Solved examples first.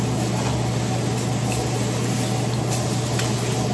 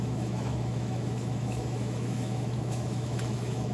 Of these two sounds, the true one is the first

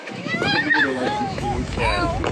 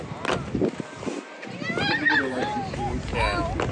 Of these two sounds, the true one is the second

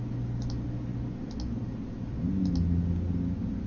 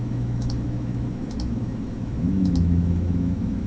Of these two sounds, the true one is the first